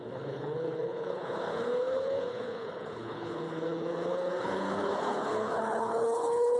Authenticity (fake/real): fake